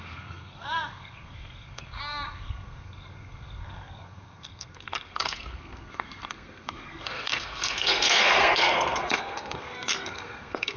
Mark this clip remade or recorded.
remade